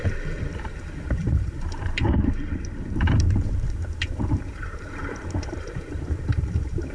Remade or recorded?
remade